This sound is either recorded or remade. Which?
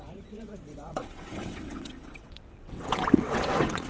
remade